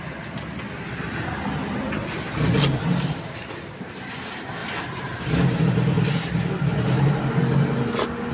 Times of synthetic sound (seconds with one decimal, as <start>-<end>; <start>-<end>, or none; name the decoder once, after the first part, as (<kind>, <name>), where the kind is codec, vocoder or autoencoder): 4.6-6.1 (vocoder, BigVGAN v2)